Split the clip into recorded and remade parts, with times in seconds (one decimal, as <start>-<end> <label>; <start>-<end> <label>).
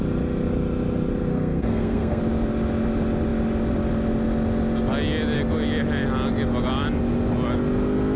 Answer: 0.0-1.3 recorded; 1.3-2.2 remade; 2.2-8.2 recorded